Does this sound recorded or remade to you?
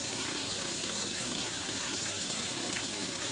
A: remade